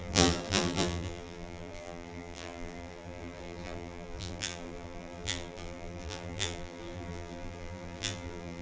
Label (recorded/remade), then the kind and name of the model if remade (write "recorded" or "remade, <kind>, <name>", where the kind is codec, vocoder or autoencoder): remade, vocoder, BigVGAN v2